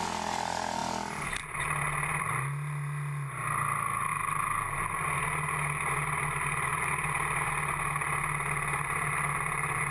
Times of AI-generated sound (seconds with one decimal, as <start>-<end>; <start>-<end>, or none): none